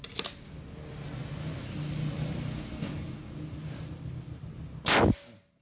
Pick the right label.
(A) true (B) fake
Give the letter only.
A